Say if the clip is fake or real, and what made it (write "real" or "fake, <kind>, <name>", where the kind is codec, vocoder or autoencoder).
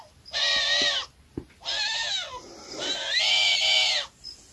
real